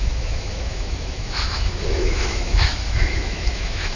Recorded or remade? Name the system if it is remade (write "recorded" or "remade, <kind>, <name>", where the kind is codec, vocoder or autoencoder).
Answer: remade, autoencoder, DAC-VAE